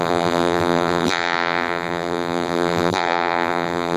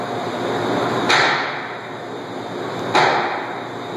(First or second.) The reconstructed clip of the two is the first